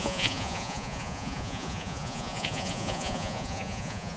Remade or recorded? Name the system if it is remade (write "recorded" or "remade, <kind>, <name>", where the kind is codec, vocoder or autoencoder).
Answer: remade, vocoder, Vocos